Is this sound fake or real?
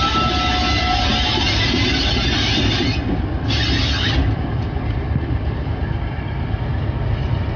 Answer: real